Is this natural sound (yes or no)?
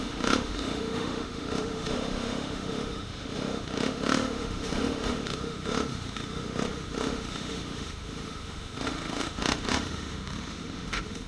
no